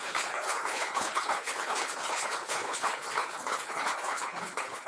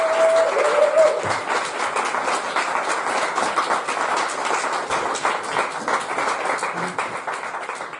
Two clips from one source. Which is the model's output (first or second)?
first